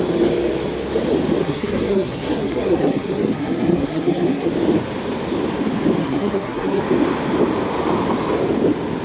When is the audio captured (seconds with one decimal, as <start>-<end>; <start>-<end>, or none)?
0.0-1.4; 4.5-6.0; 6.8-9.0